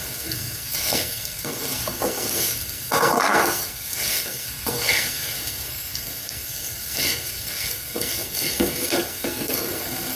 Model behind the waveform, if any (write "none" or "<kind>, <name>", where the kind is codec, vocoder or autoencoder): codec, SNAC